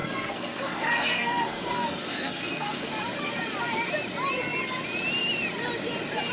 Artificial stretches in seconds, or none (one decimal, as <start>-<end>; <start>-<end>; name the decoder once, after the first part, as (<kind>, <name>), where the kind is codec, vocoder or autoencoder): 0.0-2.9 (codec, SNAC)